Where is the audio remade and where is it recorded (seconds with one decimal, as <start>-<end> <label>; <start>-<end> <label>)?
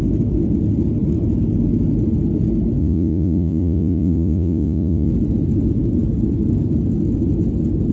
0.0-2.8 recorded; 2.8-5.1 remade; 5.1-7.9 recorded